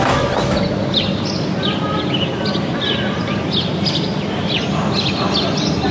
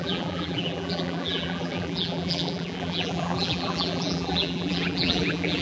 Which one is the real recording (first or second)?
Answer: first